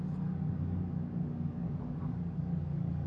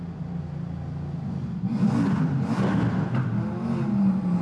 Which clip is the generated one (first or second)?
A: first